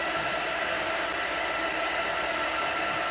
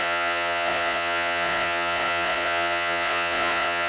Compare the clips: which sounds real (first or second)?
first